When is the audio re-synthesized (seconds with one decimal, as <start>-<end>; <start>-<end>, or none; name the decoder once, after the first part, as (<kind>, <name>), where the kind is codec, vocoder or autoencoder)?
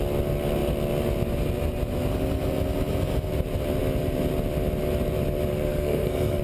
5.5-6.4 (codec, SNAC)